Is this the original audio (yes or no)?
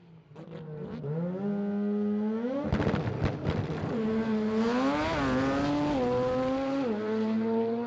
yes